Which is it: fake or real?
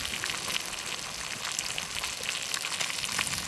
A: real